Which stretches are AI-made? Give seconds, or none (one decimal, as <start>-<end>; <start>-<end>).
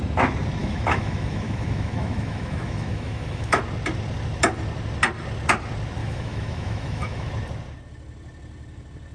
0.6-3.6; 6.0-7.3